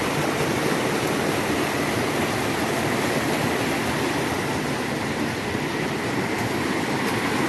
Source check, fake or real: real